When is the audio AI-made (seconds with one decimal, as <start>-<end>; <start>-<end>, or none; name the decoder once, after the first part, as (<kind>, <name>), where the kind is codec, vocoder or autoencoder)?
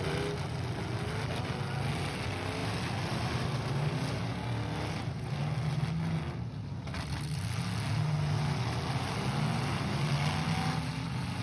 none